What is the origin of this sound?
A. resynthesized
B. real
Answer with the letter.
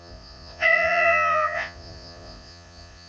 A